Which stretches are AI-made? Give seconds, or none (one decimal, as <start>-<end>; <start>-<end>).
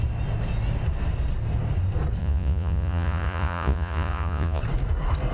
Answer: 2.2-4.6